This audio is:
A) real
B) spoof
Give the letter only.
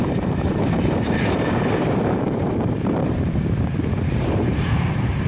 B